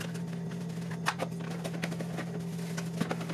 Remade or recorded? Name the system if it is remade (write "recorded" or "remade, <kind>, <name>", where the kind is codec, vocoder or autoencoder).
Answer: recorded